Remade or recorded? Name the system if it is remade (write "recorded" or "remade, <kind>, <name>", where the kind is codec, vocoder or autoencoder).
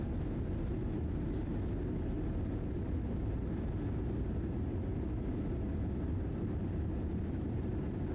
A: recorded